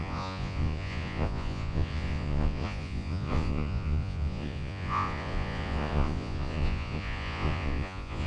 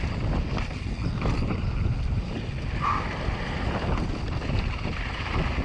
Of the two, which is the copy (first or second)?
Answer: first